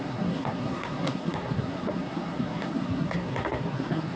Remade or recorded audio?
remade